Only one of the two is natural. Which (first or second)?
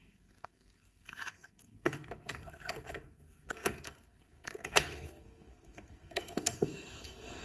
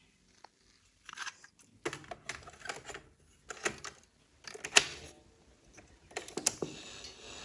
second